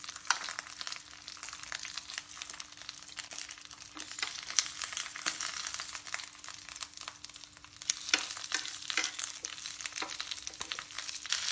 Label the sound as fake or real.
real